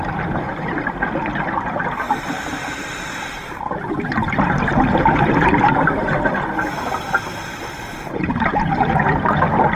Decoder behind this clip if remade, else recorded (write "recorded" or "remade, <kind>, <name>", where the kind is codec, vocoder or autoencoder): remade, vocoder, BigVGAN v2